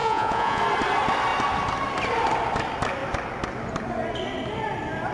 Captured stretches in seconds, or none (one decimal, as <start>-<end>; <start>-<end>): 0.6-5.1